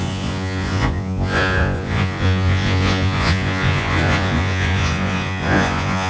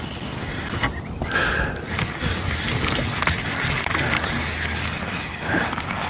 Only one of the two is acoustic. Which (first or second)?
second